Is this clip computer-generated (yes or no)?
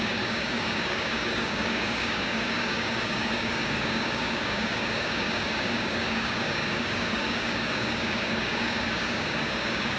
yes